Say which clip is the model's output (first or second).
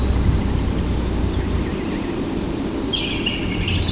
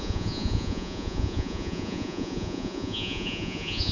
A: second